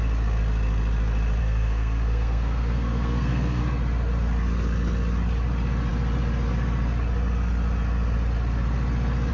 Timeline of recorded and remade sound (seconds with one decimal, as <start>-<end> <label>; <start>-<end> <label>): 0.0-1.4 recorded; 1.4-3.6 remade; 3.6-9.3 recorded